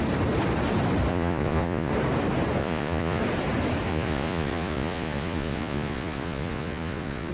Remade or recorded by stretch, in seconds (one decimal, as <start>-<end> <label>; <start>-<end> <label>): 0.0-1.1 recorded; 1.1-1.9 remade; 1.9-2.6 recorded; 2.6-3.2 remade; 3.2-3.9 recorded; 3.9-7.3 remade